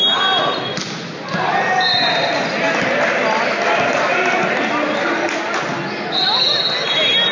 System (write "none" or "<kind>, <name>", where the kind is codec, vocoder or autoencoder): none